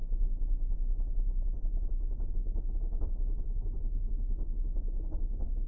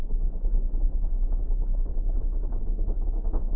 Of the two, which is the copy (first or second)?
second